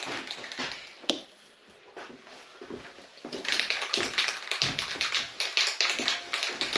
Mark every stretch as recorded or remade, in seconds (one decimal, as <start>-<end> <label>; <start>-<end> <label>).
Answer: 0.0-1.6 recorded; 1.6-2.6 remade; 2.6-3.1 recorded; 3.1-3.9 remade; 3.9-6.8 recorded